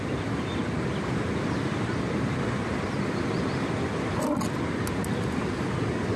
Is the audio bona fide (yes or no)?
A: yes